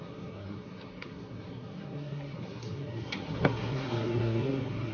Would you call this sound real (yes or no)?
no